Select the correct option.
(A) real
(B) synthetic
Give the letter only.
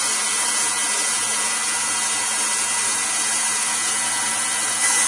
A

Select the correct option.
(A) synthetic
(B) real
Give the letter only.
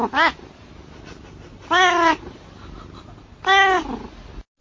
B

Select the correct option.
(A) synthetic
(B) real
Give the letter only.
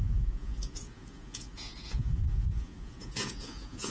A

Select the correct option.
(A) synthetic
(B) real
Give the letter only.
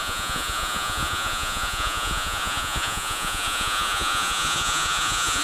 A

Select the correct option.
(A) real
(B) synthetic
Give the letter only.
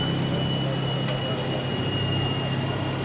A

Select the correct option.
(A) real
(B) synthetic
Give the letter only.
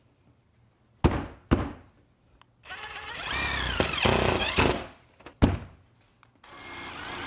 A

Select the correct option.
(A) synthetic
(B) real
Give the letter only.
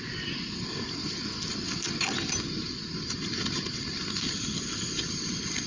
B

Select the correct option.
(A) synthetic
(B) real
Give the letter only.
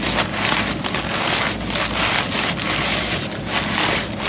B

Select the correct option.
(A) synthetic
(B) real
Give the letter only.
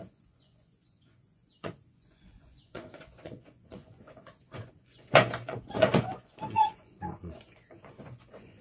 A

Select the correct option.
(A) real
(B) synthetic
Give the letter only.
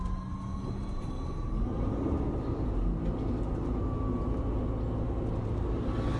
A